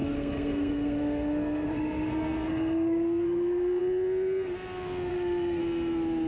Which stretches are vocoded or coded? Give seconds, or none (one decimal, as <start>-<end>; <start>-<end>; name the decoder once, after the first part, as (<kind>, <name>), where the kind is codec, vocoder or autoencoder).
0.0-3.8 (codec, SNAC); 5.1-5.6